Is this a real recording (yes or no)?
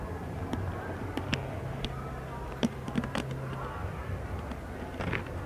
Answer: yes